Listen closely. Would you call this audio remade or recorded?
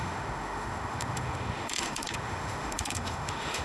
remade